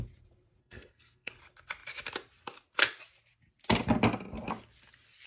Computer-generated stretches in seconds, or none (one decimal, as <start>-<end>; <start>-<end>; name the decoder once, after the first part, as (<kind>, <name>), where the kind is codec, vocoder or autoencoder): 0.6-1.3 (codec, SNAC)